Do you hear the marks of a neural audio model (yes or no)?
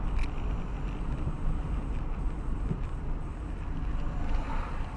no